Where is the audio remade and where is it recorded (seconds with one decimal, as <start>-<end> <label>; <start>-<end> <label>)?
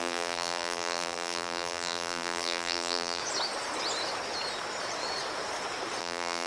0.0-3.2 remade; 3.2-6.0 recorded; 6.0-6.5 remade